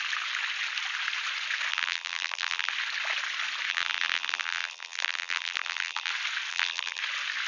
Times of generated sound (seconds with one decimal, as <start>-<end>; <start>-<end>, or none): 1.7-2.7; 3.7-6.1; 6.5-7.0